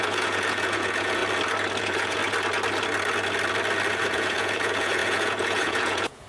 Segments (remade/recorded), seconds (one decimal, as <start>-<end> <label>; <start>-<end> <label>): 0.0-1.2 remade; 1.2-1.8 recorded; 1.8-2.2 remade; 2.2-3.9 recorded; 3.9-6.3 remade